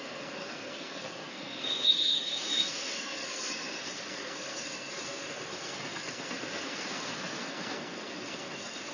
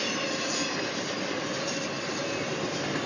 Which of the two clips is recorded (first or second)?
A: second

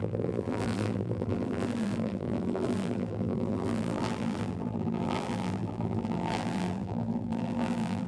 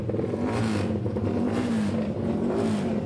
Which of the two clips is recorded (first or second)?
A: second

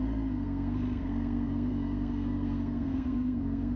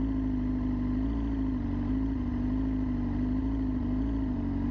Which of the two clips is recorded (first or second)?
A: second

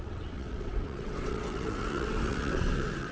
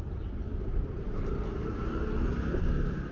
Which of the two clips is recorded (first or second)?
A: second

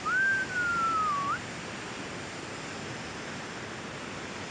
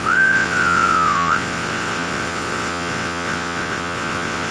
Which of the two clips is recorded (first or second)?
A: first